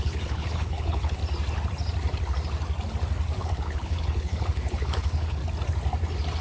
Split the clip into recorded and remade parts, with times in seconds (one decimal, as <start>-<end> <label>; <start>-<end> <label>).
0.0-1.2 remade; 1.2-3.4 recorded; 3.4-5.4 remade; 5.4-6.4 recorded